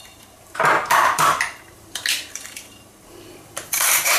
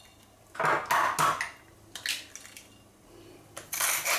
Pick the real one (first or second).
second